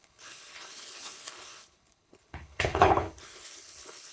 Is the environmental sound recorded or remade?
remade